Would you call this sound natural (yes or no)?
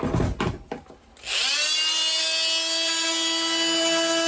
yes